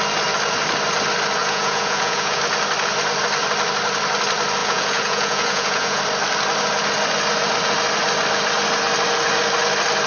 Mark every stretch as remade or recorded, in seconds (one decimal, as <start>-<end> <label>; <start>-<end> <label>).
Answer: 0.0-1.4 recorded; 1.4-2.4 remade; 2.4-4.6 recorded; 4.6-6.0 remade; 6.0-10.1 recorded